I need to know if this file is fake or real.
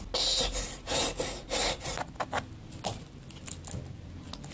real